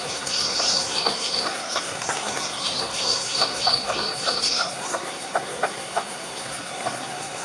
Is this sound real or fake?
fake